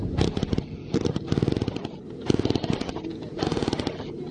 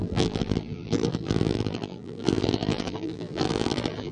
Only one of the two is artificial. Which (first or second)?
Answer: second